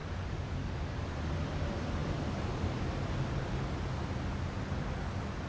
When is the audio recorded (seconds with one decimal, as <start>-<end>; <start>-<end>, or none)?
1.0-5.5